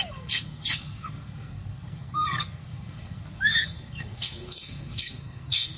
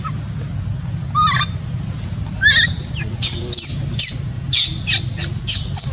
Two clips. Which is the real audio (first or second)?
second